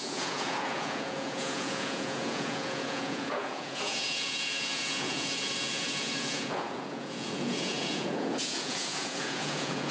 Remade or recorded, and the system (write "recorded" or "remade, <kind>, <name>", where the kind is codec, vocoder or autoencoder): remade, vocoder, Vocos